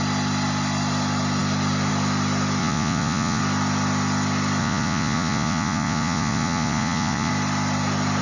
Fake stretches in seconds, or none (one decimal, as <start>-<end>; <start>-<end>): 2.6-3.4; 4.6-7.3